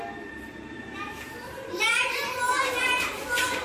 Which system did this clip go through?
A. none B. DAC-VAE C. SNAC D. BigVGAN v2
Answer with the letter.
D